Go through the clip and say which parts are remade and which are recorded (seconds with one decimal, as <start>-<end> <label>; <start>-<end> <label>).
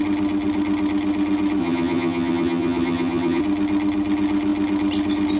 0.0-1.6 recorded; 1.6-3.4 remade; 3.4-5.4 recorded